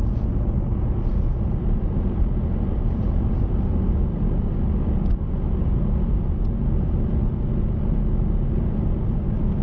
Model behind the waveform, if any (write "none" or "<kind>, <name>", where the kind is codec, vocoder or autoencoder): none